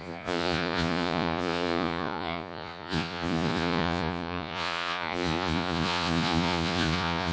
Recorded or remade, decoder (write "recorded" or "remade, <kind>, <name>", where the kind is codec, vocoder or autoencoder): remade, vocoder, Vocos